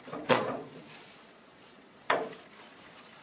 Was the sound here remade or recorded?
remade